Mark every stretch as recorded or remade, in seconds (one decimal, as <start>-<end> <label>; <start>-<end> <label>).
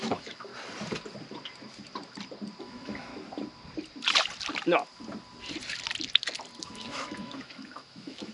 0.0-0.5 remade; 0.5-2.6 recorded; 2.6-3.1 remade; 3.1-6.6 recorded; 6.6-8.3 remade